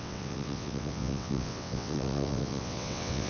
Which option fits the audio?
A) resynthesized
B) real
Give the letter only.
A